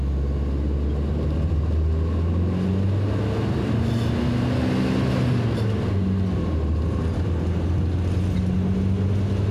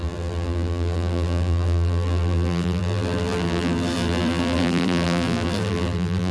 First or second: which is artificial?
second